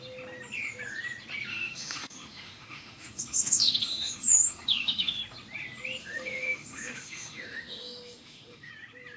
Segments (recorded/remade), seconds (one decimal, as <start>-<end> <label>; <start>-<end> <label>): 0.0-1.5 recorded; 1.5-5.2 remade; 5.2-6.0 recorded; 6.0-8.7 remade; 8.7-9.2 recorded